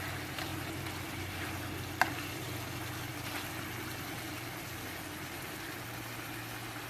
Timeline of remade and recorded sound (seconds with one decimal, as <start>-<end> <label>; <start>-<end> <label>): 0.0-6.9 recorded